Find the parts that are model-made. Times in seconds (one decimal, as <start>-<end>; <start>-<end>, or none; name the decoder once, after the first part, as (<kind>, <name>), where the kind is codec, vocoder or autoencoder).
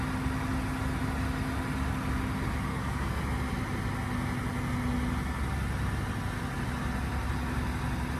2.7-3.2 (codec, SNAC)